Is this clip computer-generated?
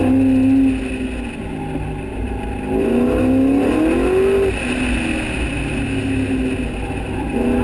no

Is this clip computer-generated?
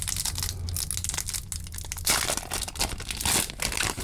no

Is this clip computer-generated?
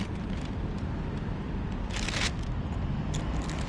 no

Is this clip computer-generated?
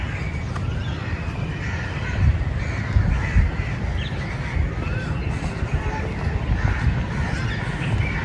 no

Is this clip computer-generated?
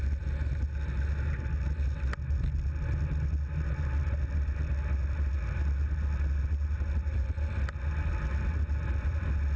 no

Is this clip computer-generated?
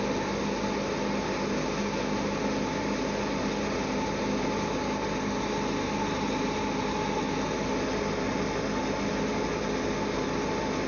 no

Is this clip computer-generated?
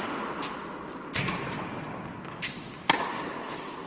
no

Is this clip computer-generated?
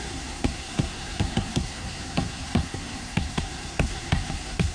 yes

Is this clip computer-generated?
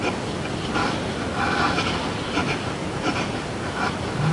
no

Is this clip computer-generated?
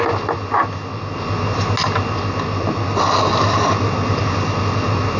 no